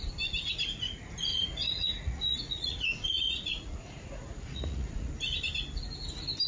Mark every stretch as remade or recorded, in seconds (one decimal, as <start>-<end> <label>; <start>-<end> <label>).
0.0-1.3 recorded; 1.3-5.1 remade; 5.1-6.5 recorded